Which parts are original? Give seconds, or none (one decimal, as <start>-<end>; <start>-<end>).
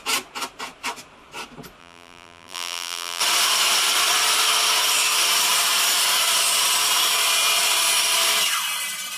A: 0.0-1.8; 3.2-9.2